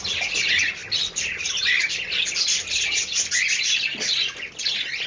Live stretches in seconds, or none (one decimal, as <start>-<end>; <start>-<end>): 0.0-5.1